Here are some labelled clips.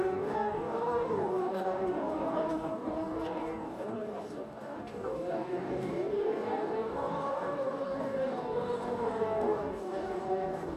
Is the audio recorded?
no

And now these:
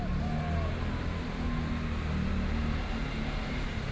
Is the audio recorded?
yes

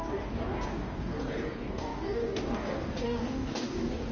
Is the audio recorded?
no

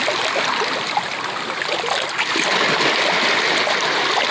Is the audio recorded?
yes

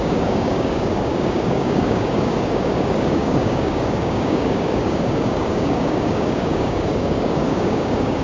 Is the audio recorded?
no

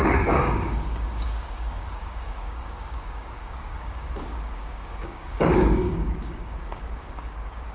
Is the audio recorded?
no